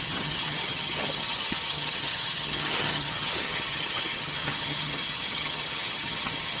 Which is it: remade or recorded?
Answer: remade